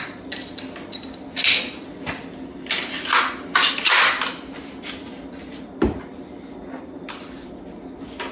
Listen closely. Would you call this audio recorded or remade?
recorded